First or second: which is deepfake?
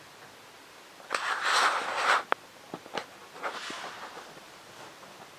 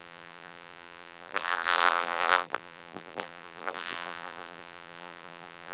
second